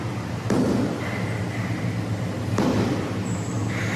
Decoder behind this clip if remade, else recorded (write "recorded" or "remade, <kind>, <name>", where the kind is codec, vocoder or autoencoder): recorded